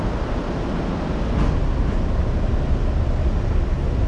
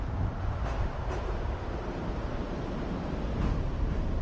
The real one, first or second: first